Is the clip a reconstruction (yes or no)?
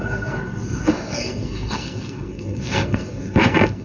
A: yes